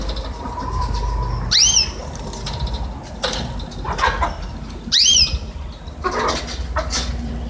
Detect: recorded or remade recorded